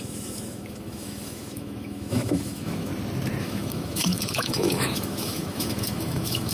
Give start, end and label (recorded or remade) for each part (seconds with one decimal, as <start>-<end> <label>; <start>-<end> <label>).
0.0-2.9 remade; 2.9-3.4 recorded; 3.4-6.5 remade